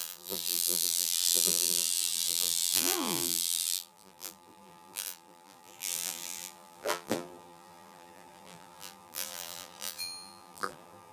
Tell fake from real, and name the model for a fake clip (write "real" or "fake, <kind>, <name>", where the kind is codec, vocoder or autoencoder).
fake, vocoder, BigVGAN v2